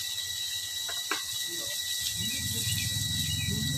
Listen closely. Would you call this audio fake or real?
real